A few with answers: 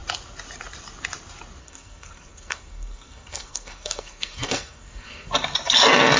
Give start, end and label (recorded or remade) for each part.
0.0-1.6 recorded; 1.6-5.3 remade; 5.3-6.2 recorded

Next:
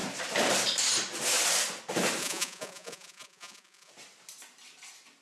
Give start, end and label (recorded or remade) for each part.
0.0-2.2 recorded; 2.2-3.9 remade; 3.9-5.2 recorded

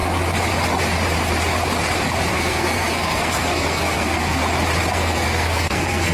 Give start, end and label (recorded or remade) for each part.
0.0-2.3 recorded; 2.3-4.4 remade; 4.4-4.9 recorded; 4.9-6.1 remade

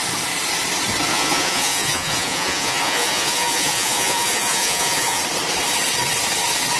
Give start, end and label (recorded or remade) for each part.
0.0-1.1 recorded; 1.1-5.2 remade; 5.2-6.8 recorded

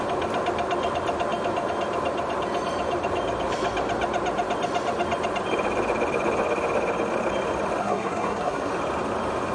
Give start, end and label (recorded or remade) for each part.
0.0-7.8 recorded; 7.8-8.7 remade; 8.7-9.5 recorded